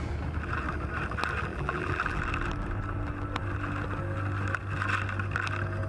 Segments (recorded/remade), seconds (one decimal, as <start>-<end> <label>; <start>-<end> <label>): 0.0-1.5 recorded; 1.5-2.2 remade; 2.2-5.9 recorded